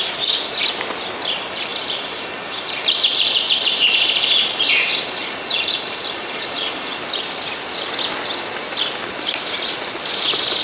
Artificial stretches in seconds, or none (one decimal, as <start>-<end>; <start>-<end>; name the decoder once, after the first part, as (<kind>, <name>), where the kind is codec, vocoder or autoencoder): 1.7-7.0 (vocoder, BigVGAN v2)